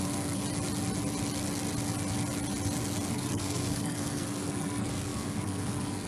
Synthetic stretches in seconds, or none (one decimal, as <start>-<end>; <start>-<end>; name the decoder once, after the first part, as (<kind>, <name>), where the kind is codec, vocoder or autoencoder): 0.0-0.4 (codec, SNAC); 3.1-6.1